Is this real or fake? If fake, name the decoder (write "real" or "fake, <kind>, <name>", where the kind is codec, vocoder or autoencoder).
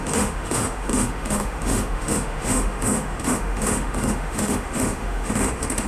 fake, autoencoder, DAC-VAE